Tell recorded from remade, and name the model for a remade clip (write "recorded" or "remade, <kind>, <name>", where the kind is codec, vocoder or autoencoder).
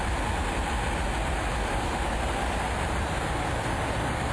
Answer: recorded